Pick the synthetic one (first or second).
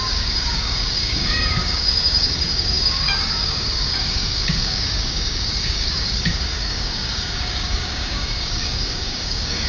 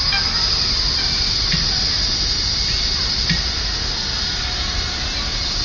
first